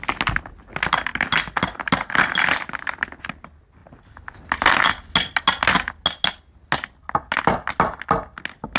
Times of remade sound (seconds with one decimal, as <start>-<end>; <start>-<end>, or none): none